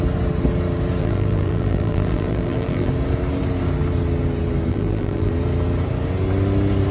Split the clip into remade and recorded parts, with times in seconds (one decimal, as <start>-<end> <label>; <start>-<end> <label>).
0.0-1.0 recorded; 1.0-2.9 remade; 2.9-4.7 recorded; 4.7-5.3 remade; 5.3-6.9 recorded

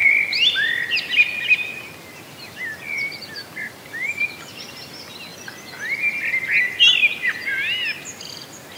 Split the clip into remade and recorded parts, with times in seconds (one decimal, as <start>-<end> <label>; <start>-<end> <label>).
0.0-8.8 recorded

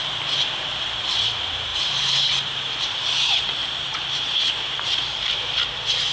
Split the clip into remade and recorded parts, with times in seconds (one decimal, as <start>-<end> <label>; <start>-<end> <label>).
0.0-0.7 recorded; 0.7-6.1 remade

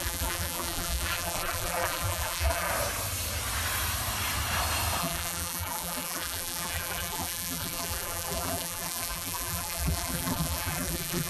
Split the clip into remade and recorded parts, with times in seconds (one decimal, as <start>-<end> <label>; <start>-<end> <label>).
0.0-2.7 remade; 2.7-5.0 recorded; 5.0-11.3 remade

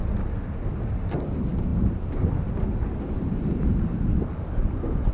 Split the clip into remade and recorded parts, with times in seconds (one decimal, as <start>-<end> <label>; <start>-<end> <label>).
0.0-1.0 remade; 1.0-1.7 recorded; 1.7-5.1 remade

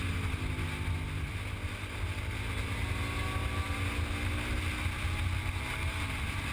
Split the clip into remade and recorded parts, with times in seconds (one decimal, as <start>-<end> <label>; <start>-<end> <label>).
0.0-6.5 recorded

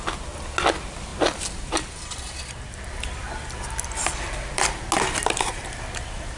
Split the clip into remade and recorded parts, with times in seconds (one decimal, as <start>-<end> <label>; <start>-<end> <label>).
0.0-1.1 recorded; 1.1-4.9 remade; 4.9-6.4 recorded

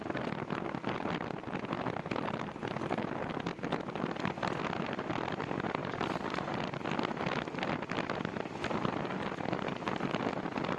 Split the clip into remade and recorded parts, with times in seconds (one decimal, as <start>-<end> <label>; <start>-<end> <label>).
0.0-5.8 recorded; 5.8-6.5 remade; 6.5-9.7 recorded; 9.7-10.2 remade; 10.2-10.8 recorded